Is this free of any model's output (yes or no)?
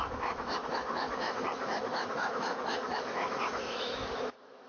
no